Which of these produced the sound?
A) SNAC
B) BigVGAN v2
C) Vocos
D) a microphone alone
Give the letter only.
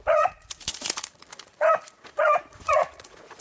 C